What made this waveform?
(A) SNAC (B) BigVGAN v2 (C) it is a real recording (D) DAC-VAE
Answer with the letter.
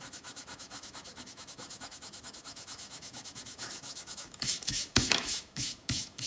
D